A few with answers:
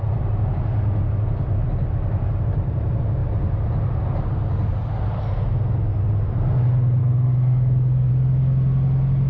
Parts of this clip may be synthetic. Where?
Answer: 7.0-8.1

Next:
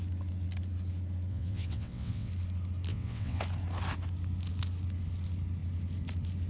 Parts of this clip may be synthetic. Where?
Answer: 1.3-2.3; 2.9-3.4

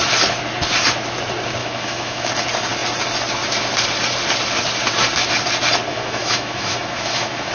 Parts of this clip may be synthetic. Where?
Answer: 1.6-2.3; 5.9-7.5

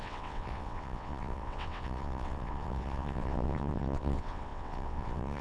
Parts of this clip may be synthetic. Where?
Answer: 0.0-5.4

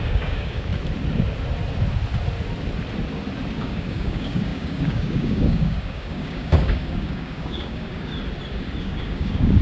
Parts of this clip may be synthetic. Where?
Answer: 0.0-0.7; 3.5-8.1; 8.8-9.6

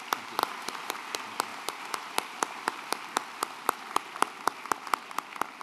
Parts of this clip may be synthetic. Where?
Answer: 0.4-0.9; 1.5-4.8